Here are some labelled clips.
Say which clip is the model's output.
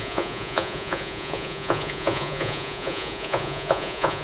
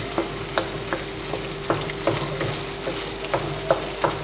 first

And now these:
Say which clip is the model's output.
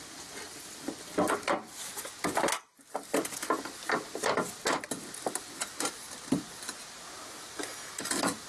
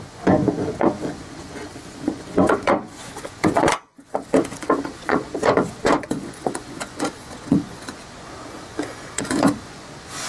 second